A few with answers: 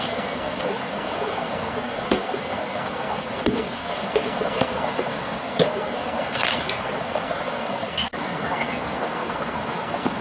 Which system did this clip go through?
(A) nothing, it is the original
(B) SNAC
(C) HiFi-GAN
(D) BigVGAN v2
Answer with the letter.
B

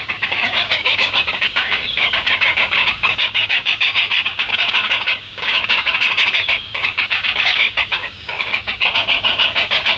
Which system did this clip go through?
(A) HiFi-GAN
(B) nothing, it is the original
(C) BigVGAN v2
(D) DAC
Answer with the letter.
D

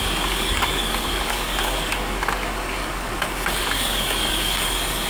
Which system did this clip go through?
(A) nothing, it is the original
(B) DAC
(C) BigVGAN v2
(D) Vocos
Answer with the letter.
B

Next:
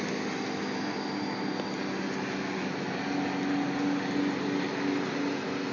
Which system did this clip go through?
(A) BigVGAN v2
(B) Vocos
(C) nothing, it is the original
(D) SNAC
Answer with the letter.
C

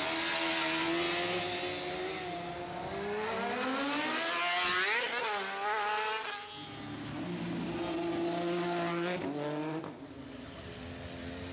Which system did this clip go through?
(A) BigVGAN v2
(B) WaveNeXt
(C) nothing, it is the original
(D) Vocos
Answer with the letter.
C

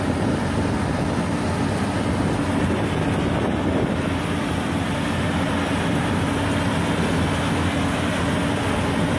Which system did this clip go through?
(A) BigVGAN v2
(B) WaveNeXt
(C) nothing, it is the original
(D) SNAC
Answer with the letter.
C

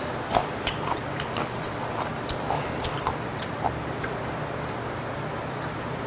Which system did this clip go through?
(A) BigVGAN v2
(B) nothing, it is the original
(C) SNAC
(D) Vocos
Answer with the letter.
A